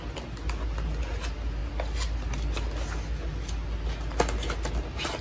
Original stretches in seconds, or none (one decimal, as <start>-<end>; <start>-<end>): 0.0-5.2